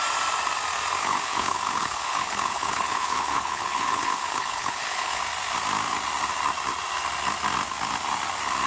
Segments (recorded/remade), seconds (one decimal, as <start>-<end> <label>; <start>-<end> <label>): 0.0-1.0 recorded; 1.0-5.2 remade; 5.2-8.7 recorded